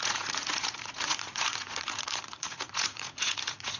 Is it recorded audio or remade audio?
remade